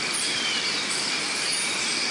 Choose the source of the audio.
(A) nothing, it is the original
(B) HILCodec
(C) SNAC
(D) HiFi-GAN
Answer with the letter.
A